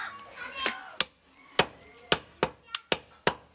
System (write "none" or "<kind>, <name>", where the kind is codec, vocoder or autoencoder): none